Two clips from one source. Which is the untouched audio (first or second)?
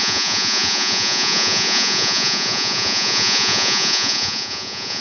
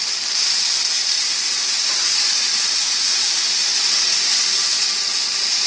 second